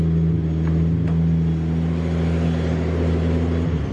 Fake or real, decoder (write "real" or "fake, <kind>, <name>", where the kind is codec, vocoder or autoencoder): real